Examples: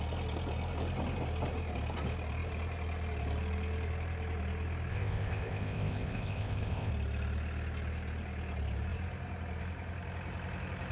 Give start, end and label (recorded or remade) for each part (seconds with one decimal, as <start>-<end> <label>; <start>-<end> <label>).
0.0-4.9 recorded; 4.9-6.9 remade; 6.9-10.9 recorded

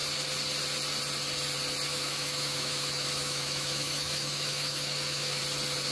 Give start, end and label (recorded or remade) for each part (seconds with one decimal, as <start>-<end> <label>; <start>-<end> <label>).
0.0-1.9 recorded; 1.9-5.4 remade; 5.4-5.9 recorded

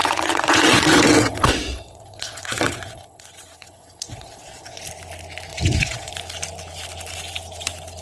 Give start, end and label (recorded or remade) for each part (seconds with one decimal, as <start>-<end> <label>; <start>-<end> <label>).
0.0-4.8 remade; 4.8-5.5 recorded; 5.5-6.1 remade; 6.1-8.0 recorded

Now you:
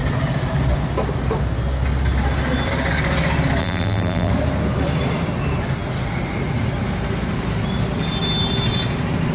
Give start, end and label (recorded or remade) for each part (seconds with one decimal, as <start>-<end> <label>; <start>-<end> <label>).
0.0-3.6 recorded; 3.6-4.3 remade; 4.3-9.3 recorded